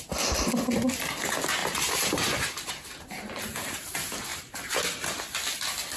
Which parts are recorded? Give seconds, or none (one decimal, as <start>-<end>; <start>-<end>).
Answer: 0.0-1.6; 2.7-4.3; 4.8-6.0